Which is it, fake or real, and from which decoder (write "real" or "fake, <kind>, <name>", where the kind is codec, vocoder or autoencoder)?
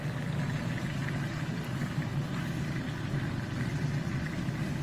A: real